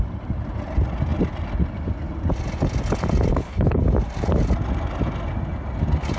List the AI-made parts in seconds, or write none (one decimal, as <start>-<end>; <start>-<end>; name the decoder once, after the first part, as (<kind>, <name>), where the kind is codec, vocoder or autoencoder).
3.3-3.8 (codec, HILCodec)